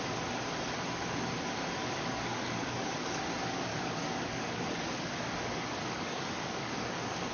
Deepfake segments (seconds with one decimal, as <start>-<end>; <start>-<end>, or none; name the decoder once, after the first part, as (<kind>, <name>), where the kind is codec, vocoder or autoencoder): 1.8-3.2 (codec, DAC); 3.7-7.3